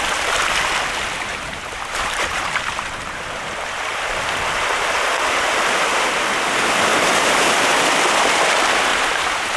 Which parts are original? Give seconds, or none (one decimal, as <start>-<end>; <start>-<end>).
0.0-1.3; 3.8-6.9; 7.5-8.9